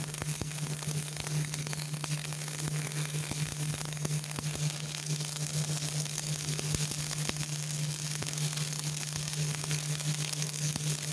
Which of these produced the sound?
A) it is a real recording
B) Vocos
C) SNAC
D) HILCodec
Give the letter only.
C